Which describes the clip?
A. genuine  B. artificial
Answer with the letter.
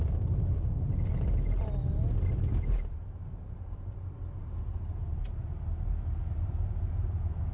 A